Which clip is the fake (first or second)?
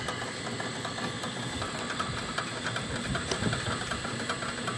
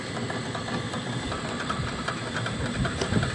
second